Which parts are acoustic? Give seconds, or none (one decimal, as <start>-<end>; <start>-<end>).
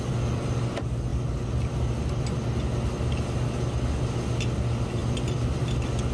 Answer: 0.0-6.1